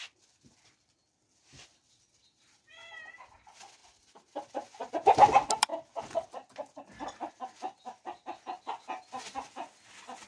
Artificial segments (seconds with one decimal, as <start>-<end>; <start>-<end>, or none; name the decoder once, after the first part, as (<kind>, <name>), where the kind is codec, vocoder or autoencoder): none

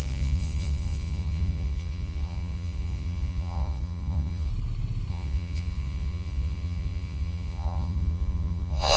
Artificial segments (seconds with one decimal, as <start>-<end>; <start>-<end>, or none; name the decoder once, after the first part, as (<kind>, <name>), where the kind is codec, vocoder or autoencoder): 0.0-4.5 (vocoder, Vocos); 5.1-9.0

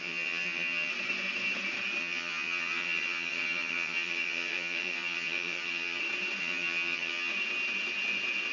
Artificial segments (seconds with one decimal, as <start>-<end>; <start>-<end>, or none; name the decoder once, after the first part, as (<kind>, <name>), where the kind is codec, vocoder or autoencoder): 0.0-0.9 (vocoder, HiFi-GAN); 2.0-6.0; 6.4-7.3

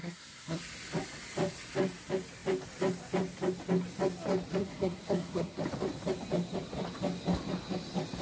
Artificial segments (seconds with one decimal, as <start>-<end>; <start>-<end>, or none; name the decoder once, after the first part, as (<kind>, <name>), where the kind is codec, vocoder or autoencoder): 0.0-0.6 (codec, SNAC); 4.6-5.6

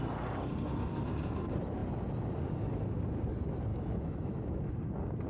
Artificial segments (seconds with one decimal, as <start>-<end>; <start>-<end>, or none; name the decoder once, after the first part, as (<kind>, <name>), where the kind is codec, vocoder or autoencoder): 3.7-4.6 (autoencoder, DAC-VAE)

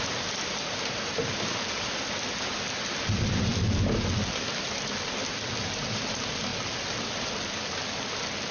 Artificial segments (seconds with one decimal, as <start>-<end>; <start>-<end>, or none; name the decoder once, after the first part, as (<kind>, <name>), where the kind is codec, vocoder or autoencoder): 0.0-3.5 (vocoder, BigVGAN v2); 4.4-6.5; 7.3-8.5